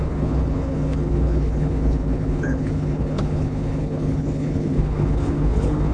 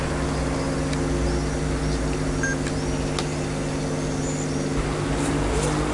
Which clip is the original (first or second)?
second